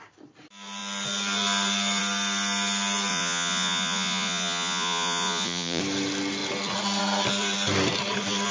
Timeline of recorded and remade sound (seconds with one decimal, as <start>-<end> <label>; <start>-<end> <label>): 0.0-3.1 recorded; 3.1-5.8 remade; 5.8-8.5 recorded